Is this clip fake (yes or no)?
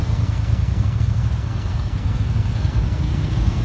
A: yes